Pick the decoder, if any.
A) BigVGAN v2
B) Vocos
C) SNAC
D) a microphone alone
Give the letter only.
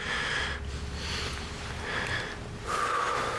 D